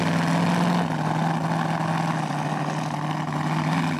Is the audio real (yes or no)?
yes